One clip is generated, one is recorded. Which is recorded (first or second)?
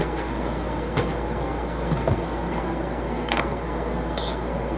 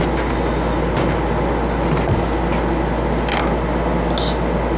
second